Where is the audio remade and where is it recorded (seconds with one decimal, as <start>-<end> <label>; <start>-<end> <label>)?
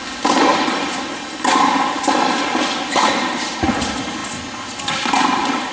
0.0-0.5 recorded; 0.5-1.5 remade; 1.5-5.7 recorded